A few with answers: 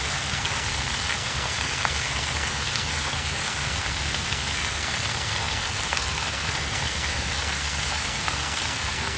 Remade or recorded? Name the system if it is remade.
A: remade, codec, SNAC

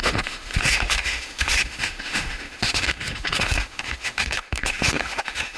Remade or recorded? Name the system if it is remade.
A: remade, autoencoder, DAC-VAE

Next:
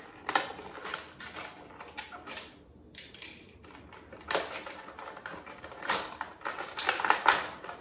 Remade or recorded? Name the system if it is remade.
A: recorded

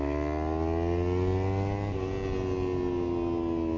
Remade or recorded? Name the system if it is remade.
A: recorded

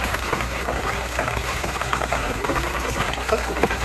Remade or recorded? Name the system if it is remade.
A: remade, codec, SNAC